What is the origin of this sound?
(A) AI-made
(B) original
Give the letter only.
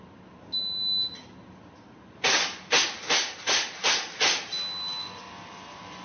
B